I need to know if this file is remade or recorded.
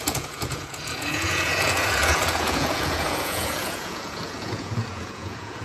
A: remade